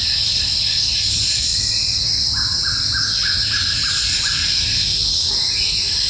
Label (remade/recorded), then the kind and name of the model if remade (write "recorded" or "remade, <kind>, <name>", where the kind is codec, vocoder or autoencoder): recorded